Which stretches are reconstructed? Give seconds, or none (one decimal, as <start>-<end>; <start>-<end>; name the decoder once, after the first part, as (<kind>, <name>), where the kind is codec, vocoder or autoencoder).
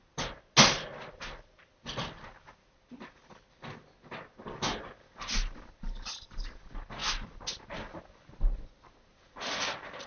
none